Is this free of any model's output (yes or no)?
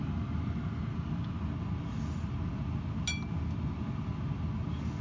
yes